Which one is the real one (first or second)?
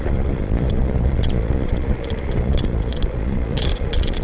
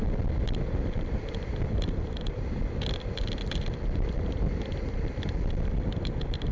second